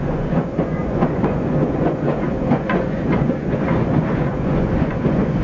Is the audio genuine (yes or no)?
no